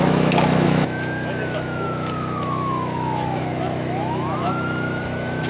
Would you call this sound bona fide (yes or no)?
no